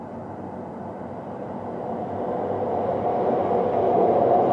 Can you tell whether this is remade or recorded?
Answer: recorded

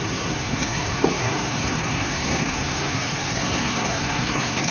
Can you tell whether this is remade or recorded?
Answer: remade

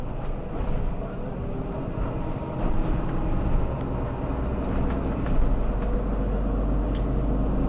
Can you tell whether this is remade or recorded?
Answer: recorded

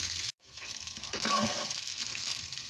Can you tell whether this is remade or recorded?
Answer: remade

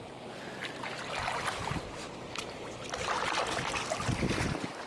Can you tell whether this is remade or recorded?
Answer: recorded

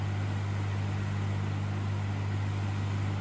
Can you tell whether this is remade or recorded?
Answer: recorded